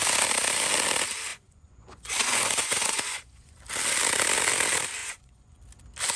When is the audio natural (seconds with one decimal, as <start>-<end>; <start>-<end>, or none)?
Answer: 0.0-1.3; 3.6-5.0; 5.6-6.2